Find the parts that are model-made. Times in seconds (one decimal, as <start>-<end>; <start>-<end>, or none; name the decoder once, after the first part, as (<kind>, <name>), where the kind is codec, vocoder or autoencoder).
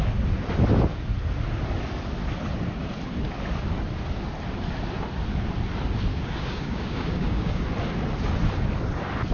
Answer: 6.1-7.6 (codec, DAC)